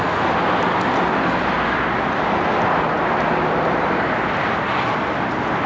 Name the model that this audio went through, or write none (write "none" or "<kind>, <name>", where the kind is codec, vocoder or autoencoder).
none